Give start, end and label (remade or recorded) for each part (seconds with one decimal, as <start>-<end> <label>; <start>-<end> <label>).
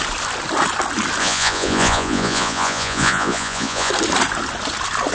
0.0-1.2 recorded; 1.2-3.9 remade; 3.9-5.1 recorded